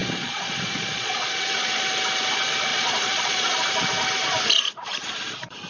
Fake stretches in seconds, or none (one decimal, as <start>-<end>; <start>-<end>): 0.0-1.8; 2.7-3.5